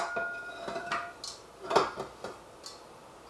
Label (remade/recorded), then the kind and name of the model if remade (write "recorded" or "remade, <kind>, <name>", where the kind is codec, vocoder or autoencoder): recorded